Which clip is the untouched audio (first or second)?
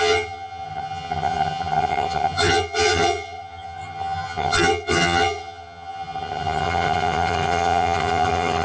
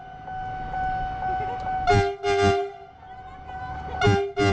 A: second